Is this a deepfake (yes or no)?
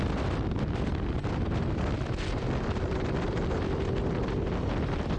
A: no